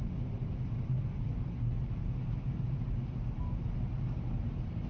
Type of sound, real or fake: real